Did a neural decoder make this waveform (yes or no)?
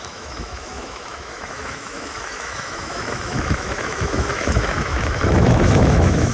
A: yes